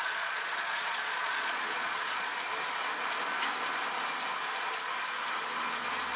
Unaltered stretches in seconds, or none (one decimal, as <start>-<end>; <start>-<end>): 2.3-6.2